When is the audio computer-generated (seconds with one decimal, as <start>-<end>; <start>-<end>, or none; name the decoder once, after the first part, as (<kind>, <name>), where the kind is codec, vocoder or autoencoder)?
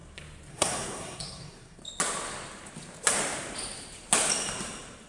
0.5-1.8 (codec, SNAC)